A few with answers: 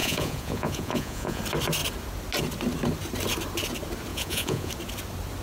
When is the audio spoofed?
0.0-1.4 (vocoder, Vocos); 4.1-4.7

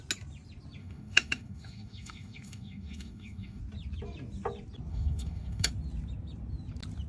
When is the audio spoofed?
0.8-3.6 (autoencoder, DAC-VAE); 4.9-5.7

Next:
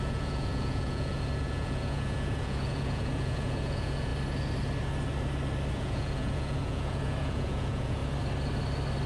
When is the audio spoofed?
0.0-4.1 (vocoder, Vocos); 5.7-8.0

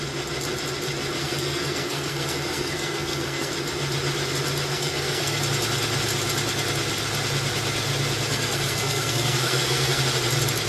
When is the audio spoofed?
1.2-3.5 (codec, SNAC); 4.7-5.4; 8.3-10.0

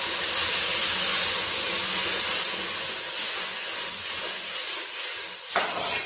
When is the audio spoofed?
1.1-4.8 (vocoder, Vocos)